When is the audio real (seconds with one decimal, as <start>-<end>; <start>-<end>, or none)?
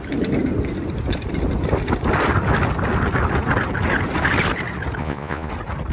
0.0-5.0; 5.5-5.9